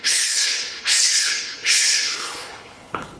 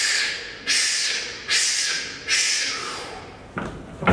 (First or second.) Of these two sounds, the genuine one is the second